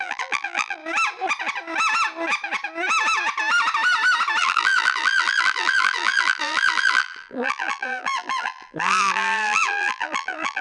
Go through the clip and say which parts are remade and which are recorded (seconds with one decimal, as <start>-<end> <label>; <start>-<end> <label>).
0.0-0.8 remade; 0.8-4.4 recorded; 4.4-10.6 remade